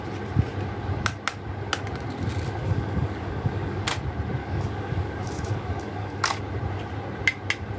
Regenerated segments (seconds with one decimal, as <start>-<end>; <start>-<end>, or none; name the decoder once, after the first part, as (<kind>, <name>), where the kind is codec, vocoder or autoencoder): 2.6-3.9 (codec, DAC); 4.4-6.4